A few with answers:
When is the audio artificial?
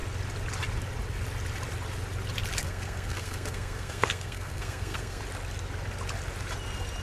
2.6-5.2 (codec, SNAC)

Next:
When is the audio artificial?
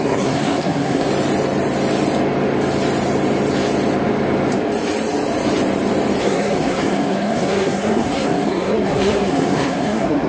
0.0-1.1 (codec, SNAC); 6.2-10.3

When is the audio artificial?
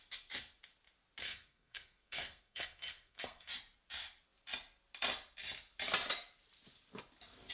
1.2-3.5 (codec, SNAC)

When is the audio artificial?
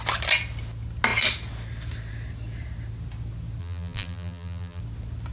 3.6-4.8 (vocoder, BigVGAN v2)